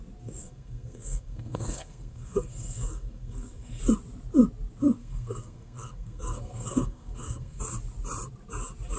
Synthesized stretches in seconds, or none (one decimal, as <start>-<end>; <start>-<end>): 0.4-3.8; 5.0-7.6